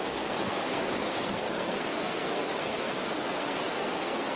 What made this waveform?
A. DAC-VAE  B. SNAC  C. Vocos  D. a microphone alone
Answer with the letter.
B